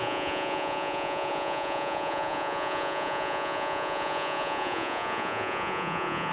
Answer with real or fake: fake